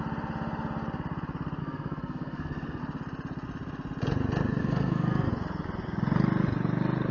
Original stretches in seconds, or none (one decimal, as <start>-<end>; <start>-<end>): 0.0-1.6; 2.8-4.6; 5.3-7.1